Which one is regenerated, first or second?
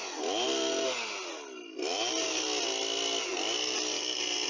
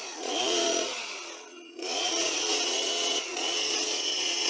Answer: second